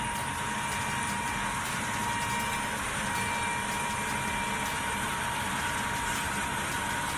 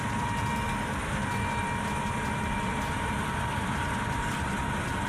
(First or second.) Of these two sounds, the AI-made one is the second